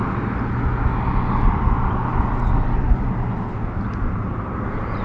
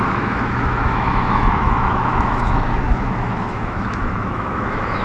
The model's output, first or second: second